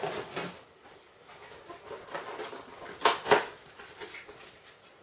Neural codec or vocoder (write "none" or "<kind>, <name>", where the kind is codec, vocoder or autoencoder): none